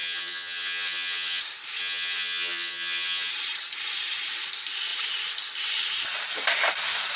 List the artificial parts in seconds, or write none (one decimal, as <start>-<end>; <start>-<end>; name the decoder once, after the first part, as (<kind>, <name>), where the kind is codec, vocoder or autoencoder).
0.0-1.4 (vocoder, HiFi-GAN); 1.8-3.3